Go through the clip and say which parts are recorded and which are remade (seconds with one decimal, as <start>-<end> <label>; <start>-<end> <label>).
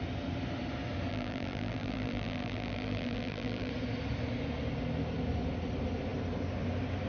0.0-1.1 recorded; 1.1-3.7 remade; 3.7-7.1 recorded